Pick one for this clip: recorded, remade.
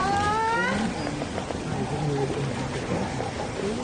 recorded